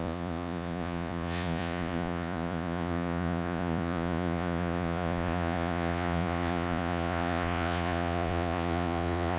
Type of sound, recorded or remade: remade